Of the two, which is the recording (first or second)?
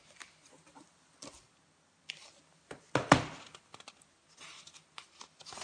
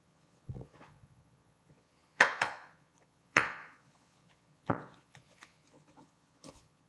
first